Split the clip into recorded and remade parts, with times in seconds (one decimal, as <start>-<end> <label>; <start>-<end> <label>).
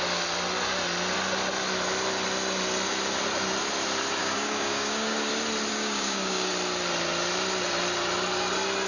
0.0-4.2 recorded; 4.2-5.3 remade; 5.3-5.7 recorded; 5.7-6.5 remade; 6.5-8.9 recorded